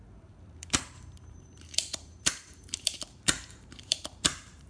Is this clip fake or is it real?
fake